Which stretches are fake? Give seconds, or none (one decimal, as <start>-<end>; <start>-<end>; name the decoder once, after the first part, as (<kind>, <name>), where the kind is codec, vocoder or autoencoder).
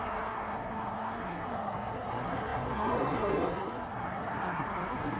0.0-5.2 (codec, SNAC)